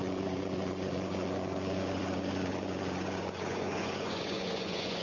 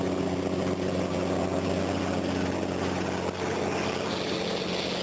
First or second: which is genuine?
second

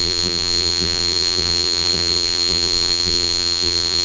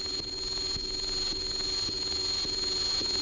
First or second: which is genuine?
second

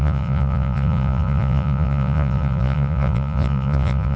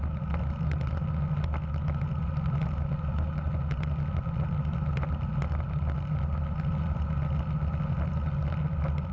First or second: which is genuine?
second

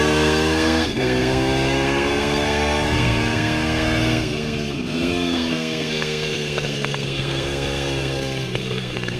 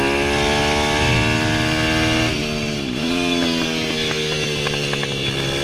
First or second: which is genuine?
second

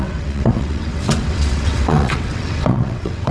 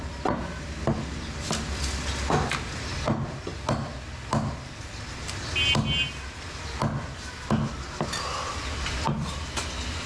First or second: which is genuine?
second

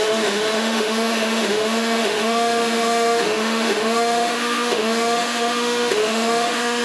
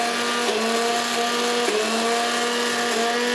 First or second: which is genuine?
second